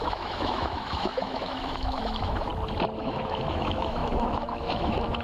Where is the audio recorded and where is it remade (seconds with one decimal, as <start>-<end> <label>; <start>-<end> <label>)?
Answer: 0.0-2.5 remade; 2.5-3.0 recorded; 3.0-5.2 remade